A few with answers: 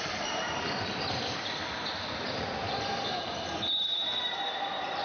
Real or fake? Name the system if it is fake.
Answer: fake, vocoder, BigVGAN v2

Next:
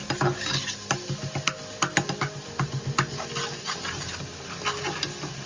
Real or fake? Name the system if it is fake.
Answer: real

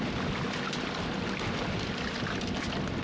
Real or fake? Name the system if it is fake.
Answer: real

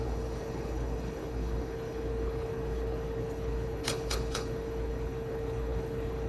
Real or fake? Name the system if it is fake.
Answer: fake, codec, HILCodec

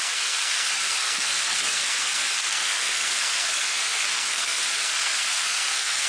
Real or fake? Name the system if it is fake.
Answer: fake, codec, SNAC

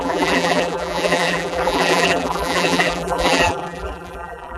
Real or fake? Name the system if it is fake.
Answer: fake, vocoder, BigVGAN v2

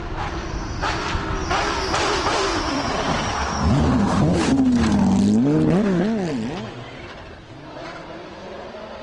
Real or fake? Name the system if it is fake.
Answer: real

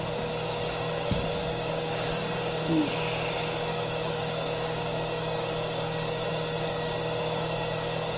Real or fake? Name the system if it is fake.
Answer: fake, codec, DAC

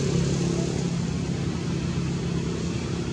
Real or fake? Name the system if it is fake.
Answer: real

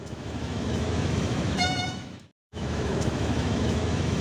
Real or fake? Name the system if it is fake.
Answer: fake, autoencoder, DAC-VAE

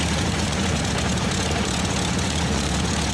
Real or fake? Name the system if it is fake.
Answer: fake, vocoder, Vocos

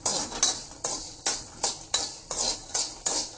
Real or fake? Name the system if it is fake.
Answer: real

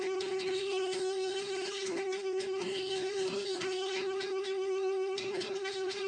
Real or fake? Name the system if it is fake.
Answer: fake, codec, SNAC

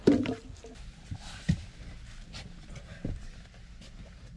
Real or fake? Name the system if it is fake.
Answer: real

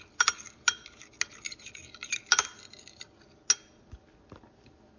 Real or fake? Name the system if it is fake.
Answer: real